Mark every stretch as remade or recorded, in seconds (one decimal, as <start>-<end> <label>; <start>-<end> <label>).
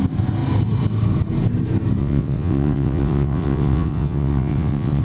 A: 0.0-2.0 recorded; 2.0-5.0 remade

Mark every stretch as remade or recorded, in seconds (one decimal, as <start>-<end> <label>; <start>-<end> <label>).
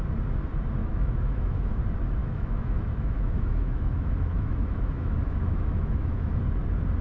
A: 0.0-0.8 recorded; 0.8-1.8 remade; 1.8-2.2 recorded; 2.2-6.4 remade; 6.4-7.0 recorded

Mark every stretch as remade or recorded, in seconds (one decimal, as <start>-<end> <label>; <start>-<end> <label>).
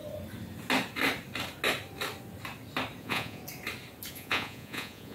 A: 0.0-3.0 recorded; 3.0-3.4 remade; 3.4-4.1 recorded; 4.1-5.1 remade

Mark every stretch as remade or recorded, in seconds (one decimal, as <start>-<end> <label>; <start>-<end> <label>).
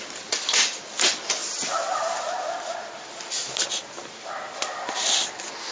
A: 0.0-5.7 recorded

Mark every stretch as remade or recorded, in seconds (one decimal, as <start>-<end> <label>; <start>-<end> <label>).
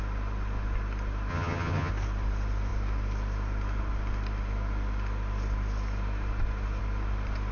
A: 0.0-1.3 recorded; 1.3-1.9 remade; 1.9-7.5 recorded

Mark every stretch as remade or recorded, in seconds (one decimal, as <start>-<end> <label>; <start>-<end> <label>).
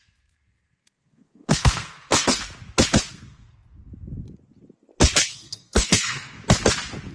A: 0.0-2.4 remade; 2.4-3.1 recorded; 3.1-3.9 remade; 3.9-5.3 recorded; 5.3-6.4 remade; 6.4-7.1 recorded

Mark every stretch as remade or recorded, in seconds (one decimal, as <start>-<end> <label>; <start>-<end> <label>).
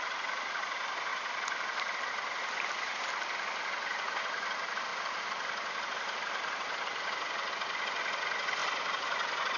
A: 0.0-1.1 recorded; 1.1-2.1 remade; 2.1-4.9 recorded; 4.9-7.5 remade; 7.5-8.6 recorded; 8.6-9.6 remade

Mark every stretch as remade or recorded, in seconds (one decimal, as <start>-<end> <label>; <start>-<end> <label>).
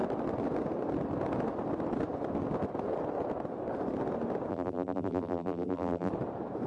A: 0.0-4.5 recorded; 4.5-6.1 remade; 6.1-6.7 recorded